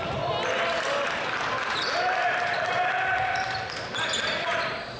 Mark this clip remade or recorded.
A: recorded